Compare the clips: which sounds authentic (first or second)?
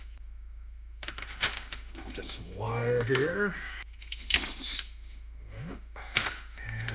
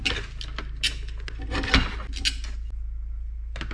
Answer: second